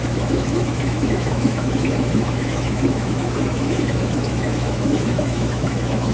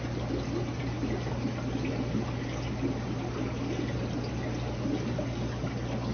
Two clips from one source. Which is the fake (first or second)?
first